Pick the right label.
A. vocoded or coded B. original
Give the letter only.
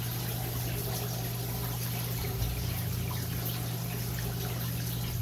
B